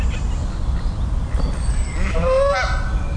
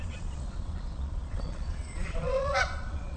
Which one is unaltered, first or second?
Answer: first